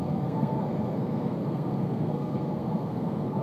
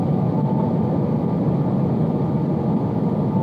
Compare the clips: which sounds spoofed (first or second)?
first